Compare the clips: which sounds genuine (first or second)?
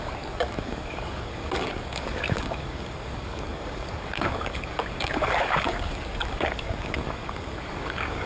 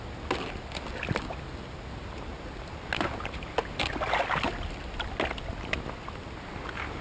second